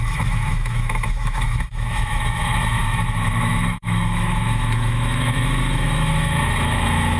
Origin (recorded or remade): remade